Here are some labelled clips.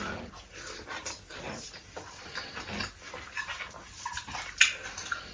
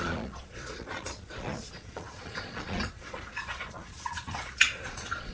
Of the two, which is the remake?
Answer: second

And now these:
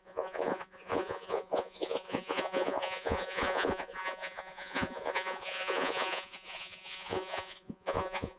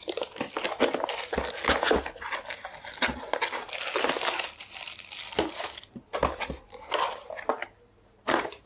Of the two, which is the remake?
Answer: first